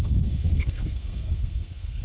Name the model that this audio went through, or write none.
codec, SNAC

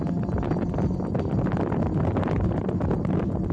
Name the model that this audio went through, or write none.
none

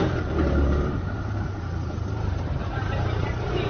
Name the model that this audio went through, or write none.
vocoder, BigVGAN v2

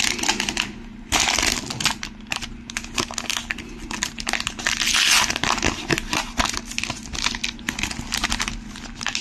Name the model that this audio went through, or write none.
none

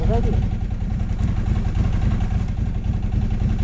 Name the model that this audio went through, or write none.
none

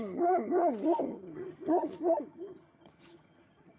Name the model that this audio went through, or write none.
vocoder, HiFi-GAN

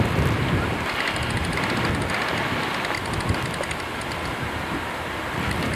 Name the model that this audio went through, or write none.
none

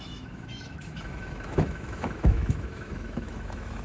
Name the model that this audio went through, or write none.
autoencoder, DAC-VAE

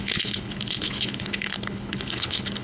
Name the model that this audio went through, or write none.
codec, HILCodec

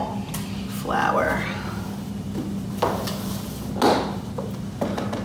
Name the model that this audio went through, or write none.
none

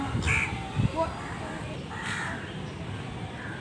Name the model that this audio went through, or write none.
none